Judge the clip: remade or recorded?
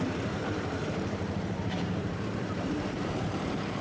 remade